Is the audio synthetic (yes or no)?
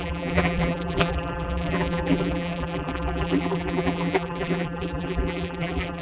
yes